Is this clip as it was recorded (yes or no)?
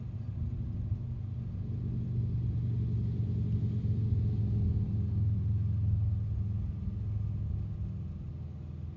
yes